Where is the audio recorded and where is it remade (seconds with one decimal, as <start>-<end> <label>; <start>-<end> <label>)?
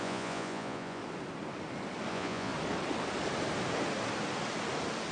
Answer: 0.0-1.0 remade; 1.0-2.1 recorded; 2.1-2.5 remade; 2.5-5.1 recorded